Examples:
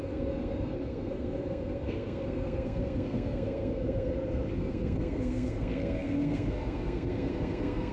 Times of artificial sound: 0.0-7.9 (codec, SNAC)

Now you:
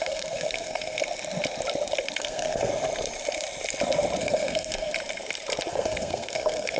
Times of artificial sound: 0.0-1.0 (codec, SNAC); 2.2-2.7; 4.2-4.9; 5.7-6.8

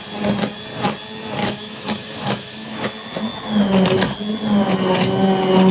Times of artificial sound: 1.4-2.9 (autoencoder, DAC-VAE)